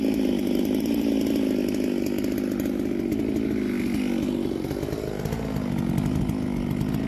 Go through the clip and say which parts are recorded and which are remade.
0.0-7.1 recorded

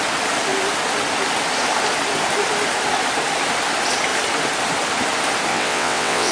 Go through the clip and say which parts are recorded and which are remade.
0.0-5.5 recorded; 5.5-6.3 remade

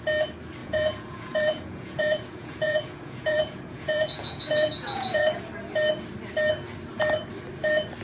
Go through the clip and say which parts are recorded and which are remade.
0.0-0.6 recorded; 0.6-5.4 remade; 5.4-8.0 recorded

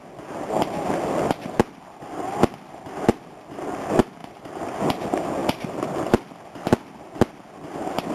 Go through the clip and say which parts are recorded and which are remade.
0.0-8.1 recorded

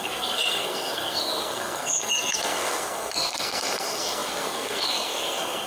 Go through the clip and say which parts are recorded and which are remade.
0.0-5.7 remade

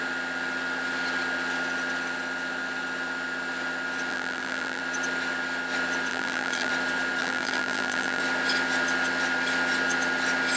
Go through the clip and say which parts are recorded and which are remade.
0.0-4.1 recorded; 4.1-4.8 remade; 4.8-6.1 recorded; 6.1-6.7 remade; 6.7-7.2 recorded; 7.2-8.2 remade; 8.2-10.6 recorded

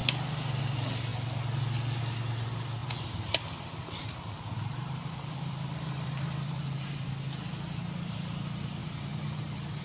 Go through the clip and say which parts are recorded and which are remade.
0.0-2.8 recorded; 2.8-7.1 remade; 7.1-8.8 recorded; 8.8-9.8 remade